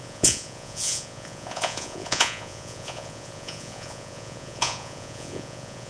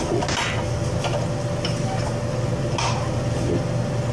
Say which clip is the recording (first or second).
second